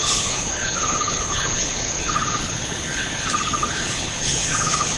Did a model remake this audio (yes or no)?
yes